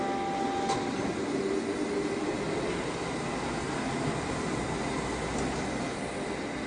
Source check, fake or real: real